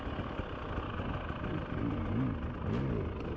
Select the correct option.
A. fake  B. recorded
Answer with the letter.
B